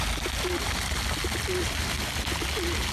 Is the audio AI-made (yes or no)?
no